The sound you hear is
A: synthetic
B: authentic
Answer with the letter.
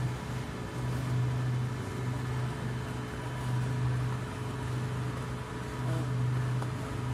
B